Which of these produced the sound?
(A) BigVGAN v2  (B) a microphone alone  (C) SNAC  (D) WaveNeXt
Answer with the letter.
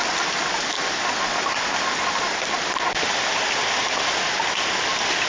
B